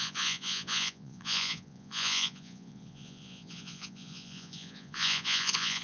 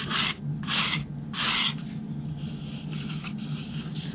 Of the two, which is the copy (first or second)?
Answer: first